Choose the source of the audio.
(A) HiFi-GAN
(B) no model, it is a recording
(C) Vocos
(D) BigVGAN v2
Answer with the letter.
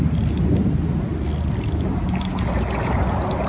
B